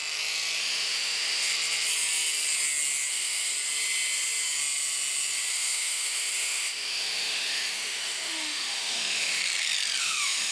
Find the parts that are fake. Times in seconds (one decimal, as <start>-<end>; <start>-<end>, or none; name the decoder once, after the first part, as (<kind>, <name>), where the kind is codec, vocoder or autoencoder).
0.6-1.5 (autoencoder, DAC-VAE); 3.1-3.5; 5.5-9.4; 10.0-10.5